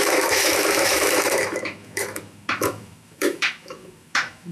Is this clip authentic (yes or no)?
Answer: no